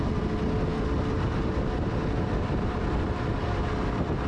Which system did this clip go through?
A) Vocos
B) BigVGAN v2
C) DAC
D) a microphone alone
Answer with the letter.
D